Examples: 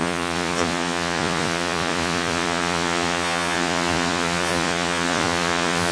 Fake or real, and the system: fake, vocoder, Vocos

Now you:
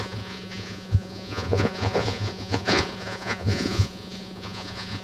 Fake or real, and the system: fake, vocoder, Vocos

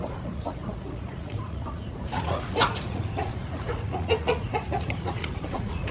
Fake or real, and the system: fake, vocoder, Vocos